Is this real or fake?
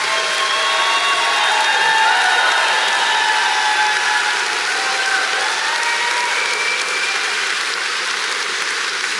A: real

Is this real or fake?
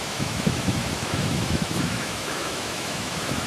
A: fake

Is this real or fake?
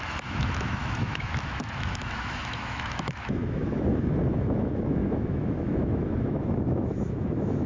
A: fake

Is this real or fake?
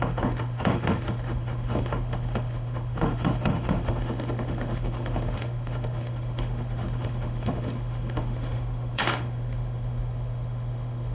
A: fake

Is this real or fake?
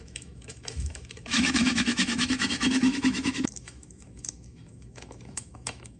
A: fake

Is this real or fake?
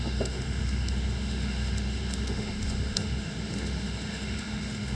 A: fake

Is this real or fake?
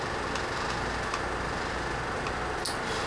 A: real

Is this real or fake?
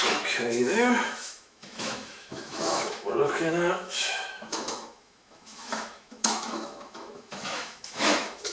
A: fake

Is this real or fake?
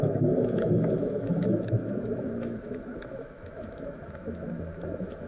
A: fake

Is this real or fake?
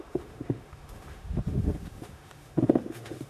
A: fake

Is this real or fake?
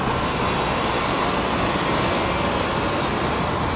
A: real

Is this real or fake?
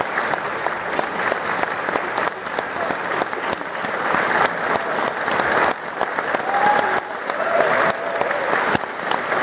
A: real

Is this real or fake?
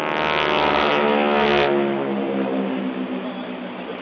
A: real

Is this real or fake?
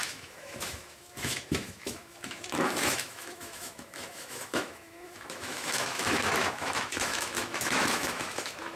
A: fake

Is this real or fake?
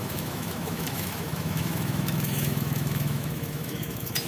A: fake